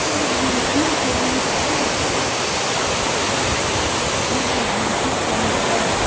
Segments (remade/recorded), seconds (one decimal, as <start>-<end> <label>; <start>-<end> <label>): 0.0-6.1 recorded